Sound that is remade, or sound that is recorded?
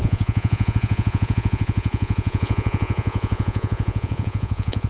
remade